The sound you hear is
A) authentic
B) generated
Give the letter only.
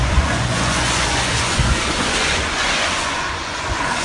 B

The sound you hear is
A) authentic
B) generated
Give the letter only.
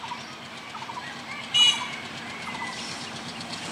A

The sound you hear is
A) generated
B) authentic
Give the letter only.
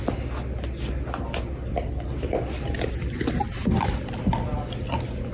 B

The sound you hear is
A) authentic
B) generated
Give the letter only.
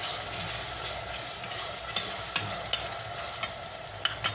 A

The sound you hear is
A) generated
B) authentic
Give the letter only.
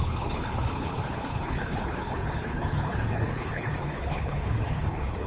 A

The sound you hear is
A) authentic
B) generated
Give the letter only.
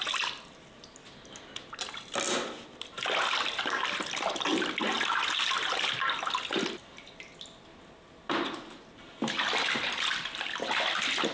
A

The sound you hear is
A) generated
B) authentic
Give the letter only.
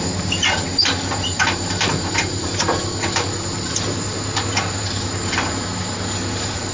A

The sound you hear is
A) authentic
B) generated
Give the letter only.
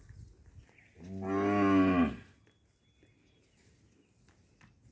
A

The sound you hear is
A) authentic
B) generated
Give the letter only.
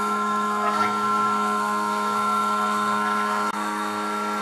B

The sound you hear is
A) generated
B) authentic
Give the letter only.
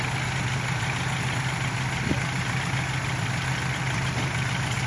B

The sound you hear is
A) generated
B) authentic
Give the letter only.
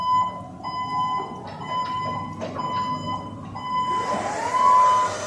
B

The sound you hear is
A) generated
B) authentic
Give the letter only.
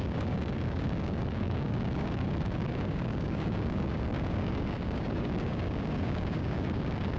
A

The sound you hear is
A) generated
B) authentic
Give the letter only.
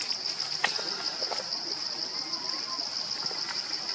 B